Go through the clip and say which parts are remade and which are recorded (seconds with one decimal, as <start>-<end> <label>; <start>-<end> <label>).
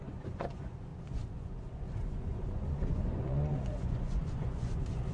0.0-5.1 remade